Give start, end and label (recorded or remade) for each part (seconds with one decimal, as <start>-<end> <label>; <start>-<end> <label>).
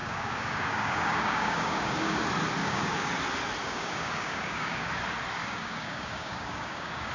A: 0.0-2.2 remade; 2.2-2.6 recorded; 2.6-3.1 remade; 3.1-3.6 recorded; 3.6-4.9 remade; 4.9-5.4 recorded; 5.4-7.1 remade